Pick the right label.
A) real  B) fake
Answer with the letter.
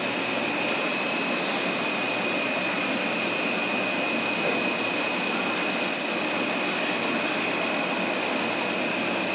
A